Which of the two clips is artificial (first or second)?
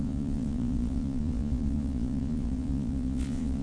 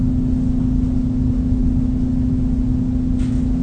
first